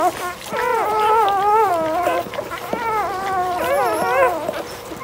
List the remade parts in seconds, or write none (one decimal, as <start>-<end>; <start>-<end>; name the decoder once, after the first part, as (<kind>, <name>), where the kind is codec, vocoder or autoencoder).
0.7-3.7 (vocoder, BigVGAN v2)

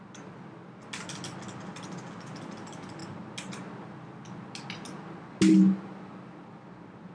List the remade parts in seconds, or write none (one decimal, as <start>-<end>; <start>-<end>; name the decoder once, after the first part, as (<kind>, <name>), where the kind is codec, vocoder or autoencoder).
none